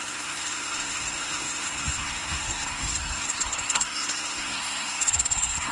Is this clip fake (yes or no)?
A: yes